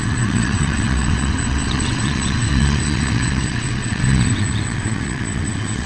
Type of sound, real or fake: fake